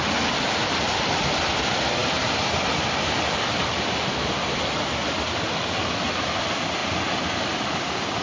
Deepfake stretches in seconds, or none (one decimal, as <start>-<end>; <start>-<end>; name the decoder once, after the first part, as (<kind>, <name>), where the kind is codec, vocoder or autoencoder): none